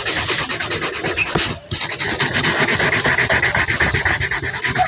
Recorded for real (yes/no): yes